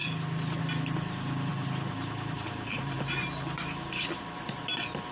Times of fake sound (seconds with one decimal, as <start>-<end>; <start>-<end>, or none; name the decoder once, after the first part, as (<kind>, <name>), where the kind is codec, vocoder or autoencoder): 1.5-4.6 (vocoder, BigVGAN v2)